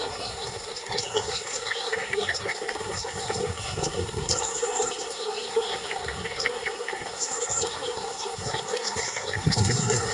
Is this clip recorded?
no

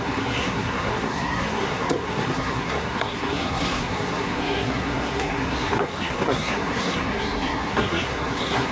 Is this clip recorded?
no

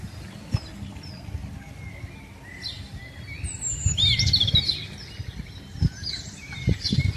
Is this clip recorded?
yes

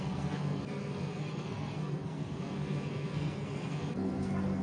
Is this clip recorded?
no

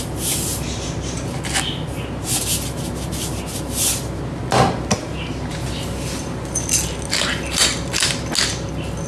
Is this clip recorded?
yes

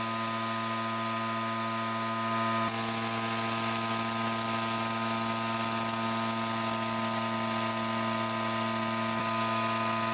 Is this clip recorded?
yes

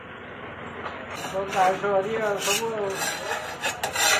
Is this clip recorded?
yes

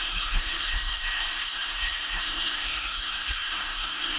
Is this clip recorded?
no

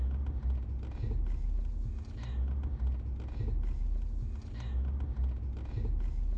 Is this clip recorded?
yes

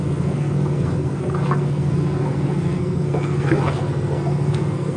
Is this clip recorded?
no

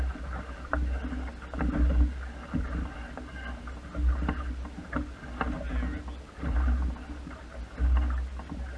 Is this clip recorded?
yes